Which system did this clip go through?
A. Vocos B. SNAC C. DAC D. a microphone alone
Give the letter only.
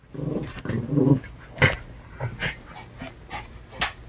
D